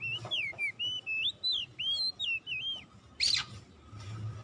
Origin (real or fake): real